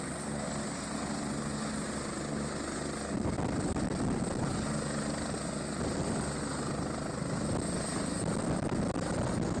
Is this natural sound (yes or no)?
yes